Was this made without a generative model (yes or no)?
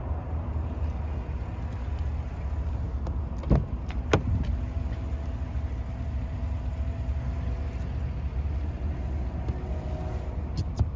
yes